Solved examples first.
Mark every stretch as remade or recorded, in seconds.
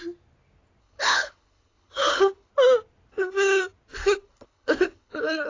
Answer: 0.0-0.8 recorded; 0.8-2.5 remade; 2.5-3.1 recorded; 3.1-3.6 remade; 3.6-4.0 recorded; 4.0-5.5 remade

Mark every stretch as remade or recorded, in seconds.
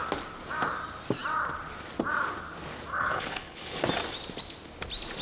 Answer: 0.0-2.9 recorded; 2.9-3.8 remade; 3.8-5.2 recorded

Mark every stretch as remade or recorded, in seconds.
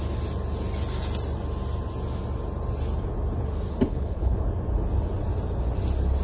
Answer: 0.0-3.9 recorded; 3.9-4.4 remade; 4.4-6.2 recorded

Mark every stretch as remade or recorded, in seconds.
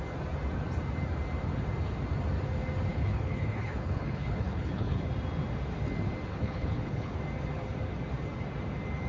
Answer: 0.0-2.9 recorded; 2.9-5.1 remade; 5.1-6.3 recorded; 6.3-7.1 remade; 7.1-9.1 recorded